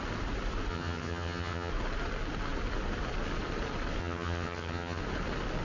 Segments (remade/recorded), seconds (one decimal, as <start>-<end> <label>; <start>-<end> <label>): 0.0-0.7 recorded; 0.7-1.7 remade; 1.7-4.0 recorded; 4.0-5.0 remade; 5.0-5.6 recorded

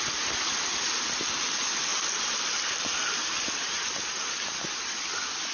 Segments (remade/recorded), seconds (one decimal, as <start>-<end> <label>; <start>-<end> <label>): 0.0-5.5 recorded